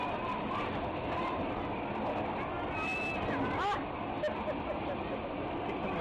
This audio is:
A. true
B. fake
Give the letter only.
A